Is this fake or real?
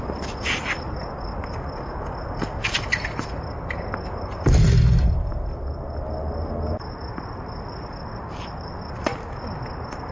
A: real